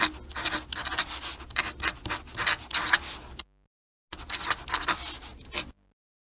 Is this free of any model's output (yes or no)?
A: yes